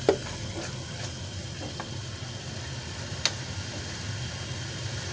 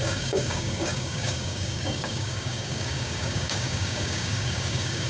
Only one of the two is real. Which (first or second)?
first